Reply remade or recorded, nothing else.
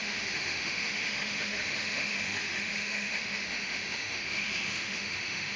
remade